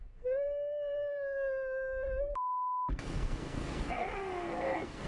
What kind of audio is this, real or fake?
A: fake